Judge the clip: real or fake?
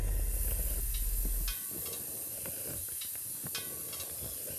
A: real